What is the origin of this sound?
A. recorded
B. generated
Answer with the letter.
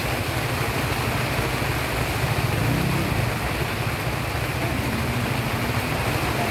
A